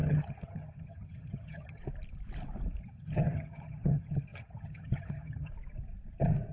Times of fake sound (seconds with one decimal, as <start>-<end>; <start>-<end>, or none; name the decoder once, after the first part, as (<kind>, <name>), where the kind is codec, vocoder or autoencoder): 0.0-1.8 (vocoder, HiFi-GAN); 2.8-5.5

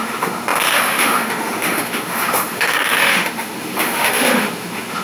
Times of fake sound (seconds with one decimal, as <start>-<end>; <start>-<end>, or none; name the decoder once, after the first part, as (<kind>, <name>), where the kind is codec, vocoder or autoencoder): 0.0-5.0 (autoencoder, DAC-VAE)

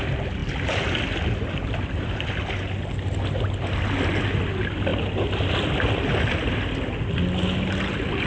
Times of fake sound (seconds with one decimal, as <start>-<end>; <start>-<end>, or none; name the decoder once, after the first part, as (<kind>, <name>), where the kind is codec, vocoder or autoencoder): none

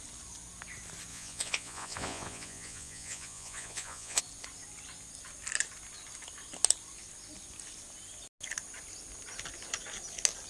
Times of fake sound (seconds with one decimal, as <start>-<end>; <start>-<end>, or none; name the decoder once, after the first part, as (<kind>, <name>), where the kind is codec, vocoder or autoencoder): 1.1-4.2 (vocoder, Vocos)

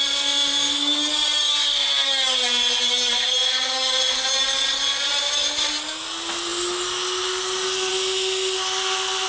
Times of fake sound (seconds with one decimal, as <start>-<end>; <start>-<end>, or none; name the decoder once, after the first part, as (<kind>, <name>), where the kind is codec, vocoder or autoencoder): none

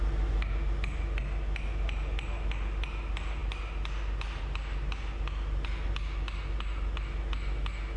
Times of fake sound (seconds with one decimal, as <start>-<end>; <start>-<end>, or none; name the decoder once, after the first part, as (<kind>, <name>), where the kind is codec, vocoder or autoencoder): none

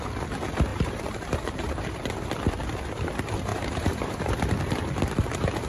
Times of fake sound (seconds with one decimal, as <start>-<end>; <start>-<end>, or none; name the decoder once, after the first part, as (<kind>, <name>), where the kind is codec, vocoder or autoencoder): 0.7-2.1 (vocoder, BigVGAN v2); 3.5-4.3